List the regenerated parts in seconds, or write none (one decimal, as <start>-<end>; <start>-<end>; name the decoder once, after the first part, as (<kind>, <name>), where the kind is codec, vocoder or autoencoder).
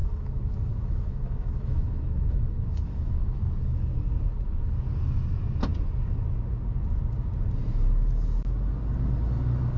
0.0-3.4 (autoencoder, DAC-VAE)